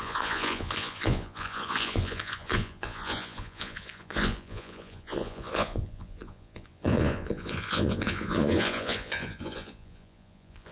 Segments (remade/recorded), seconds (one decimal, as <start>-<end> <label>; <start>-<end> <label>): 0.0-10.7 remade